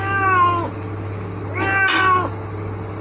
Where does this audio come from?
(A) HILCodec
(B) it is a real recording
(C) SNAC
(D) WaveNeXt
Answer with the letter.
B